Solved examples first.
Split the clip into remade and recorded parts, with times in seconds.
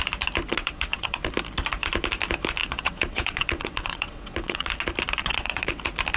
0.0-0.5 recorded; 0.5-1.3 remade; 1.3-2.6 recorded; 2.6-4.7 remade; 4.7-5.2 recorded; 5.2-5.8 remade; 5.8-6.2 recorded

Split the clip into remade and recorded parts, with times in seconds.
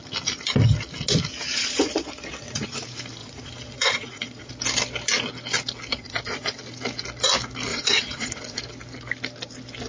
0.0-1.5 recorded; 1.5-2.8 remade; 2.8-3.2 recorded; 3.2-4.5 remade; 4.5-5.9 recorded; 5.9-6.6 remade; 6.6-7.7 recorded; 7.7-8.6 remade; 8.6-9.9 recorded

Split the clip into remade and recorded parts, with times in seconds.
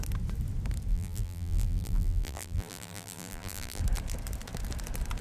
0.0-0.9 recorded; 0.9-3.8 remade; 3.8-5.2 recorded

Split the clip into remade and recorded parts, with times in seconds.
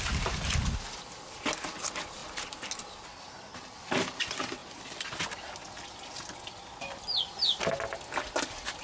0.0-8.8 recorded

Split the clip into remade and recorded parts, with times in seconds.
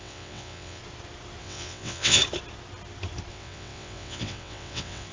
0.0-0.8 remade; 0.8-1.4 recorded; 1.4-2.2 remade; 2.2-3.3 recorded; 3.3-5.1 remade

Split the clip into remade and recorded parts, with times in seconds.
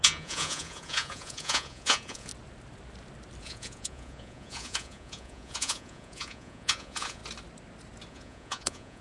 0.0-2.3 remade; 2.3-3.4 recorded; 3.4-7.2 remade; 7.2-8.1 recorded; 8.1-9.0 remade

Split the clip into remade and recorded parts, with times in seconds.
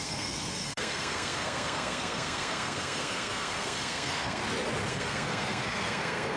0.0-4.4 remade; 4.4-4.9 recorded; 4.9-6.4 remade